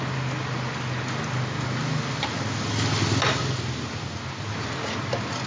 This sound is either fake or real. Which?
real